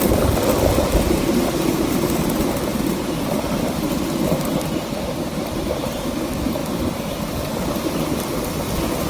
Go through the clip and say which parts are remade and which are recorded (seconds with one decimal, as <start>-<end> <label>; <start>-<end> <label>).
0.0-9.1 recorded

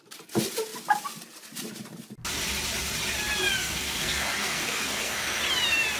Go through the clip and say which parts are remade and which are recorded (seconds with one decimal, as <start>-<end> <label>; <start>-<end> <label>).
0.0-3.6 recorded; 3.6-5.4 remade; 5.4-6.0 recorded